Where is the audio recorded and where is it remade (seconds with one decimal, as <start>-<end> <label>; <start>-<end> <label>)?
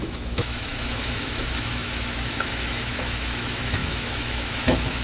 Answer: 0.0-5.0 remade